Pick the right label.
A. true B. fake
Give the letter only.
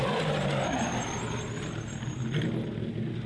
A